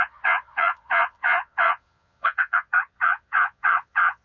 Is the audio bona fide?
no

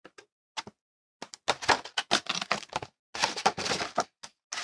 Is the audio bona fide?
yes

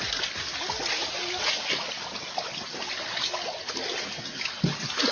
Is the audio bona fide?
yes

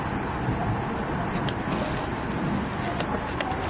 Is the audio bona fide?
yes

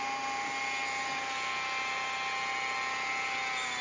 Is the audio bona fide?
yes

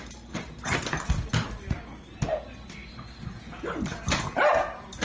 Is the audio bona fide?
yes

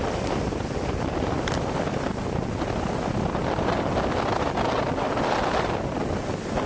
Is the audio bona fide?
yes